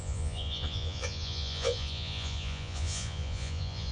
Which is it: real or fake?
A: fake